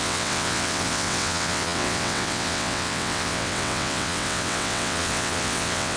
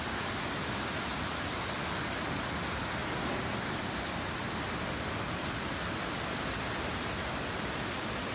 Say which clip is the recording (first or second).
second